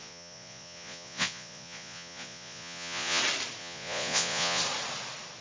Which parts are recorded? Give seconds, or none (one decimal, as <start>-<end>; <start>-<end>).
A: 3.2-3.6; 4.6-5.4